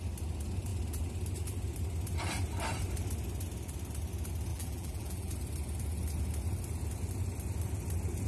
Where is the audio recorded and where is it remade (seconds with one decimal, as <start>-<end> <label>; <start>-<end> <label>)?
0.0-4.5 recorded; 4.5-5.3 remade; 5.3-8.3 recorded